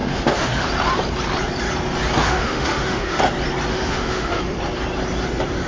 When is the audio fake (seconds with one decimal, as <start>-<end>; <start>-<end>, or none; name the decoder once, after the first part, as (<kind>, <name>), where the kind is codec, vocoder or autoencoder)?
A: 0.0-0.7 (autoencoder, DAC-VAE); 2.2-3.2; 3.7-4.4